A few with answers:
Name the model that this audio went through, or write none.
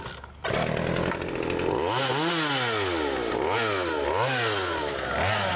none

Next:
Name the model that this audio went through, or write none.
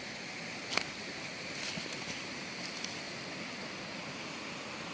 none